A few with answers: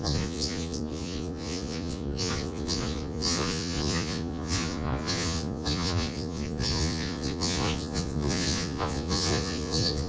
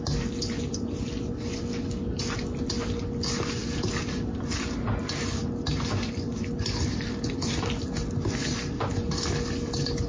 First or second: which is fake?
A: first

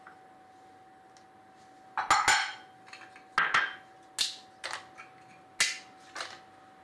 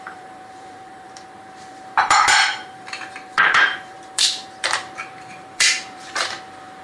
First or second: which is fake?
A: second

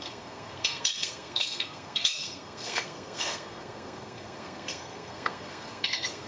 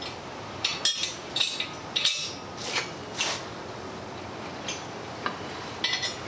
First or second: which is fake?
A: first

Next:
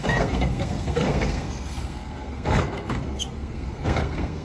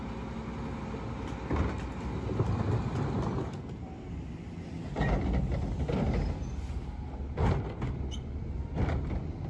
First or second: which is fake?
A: first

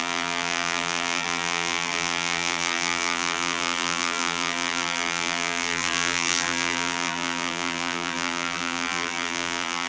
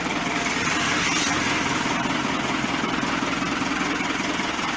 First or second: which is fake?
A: first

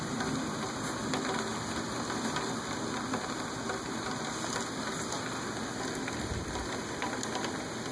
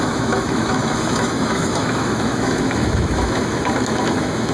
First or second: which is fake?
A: second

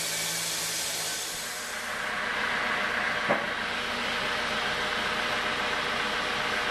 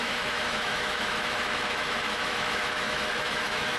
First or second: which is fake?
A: second